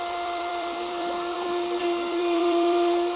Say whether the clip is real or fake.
fake